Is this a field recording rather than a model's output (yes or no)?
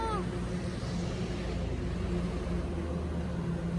yes